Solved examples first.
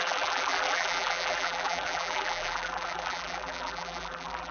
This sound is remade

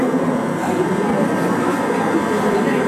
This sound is remade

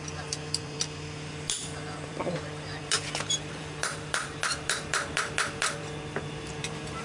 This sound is remade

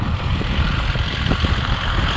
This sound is remade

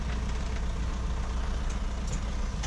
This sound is recorded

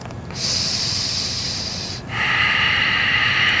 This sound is recorded